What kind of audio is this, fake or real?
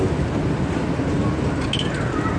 real